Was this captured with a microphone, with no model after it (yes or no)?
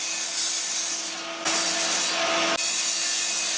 yes